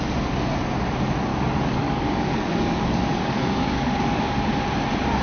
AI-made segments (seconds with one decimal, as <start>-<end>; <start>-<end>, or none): 1.3-4.4